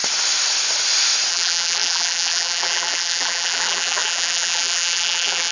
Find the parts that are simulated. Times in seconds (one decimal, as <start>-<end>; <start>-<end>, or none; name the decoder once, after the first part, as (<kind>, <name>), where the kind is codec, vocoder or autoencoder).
1.3-5.5 (vocoder, BigVGAN v2)

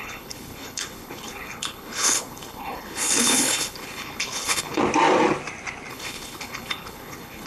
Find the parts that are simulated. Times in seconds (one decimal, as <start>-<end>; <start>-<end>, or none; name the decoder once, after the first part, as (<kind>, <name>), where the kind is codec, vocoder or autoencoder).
0.0-4.8 (codec, HILCodec); 5.9-7.5

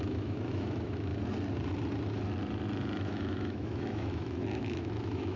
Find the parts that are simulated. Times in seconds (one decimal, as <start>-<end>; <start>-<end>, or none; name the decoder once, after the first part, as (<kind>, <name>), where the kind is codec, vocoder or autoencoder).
0.0-1.1 (autoencoder, DAC-VAE); 3.0-5.4

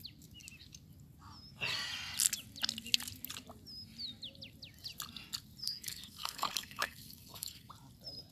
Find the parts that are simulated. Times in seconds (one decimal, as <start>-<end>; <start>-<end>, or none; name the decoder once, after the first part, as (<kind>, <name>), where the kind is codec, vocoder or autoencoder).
5.6-7.7 (codec, SNAC)

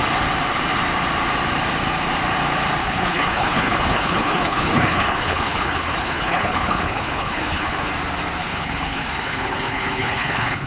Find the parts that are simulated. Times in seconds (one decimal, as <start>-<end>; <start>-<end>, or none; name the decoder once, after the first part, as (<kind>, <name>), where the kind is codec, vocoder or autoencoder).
2.8-7.9 (codec, HILCodec); 8.4-10.7

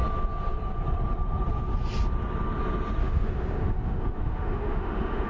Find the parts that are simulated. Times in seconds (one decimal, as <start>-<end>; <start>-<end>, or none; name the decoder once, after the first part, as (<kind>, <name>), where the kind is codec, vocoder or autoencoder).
3.0-5.3 (autoencoder, DAC-VAE)